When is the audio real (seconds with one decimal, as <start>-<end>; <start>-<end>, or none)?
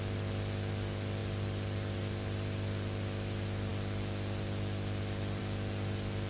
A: 0.0-1.2; 2.0-6.3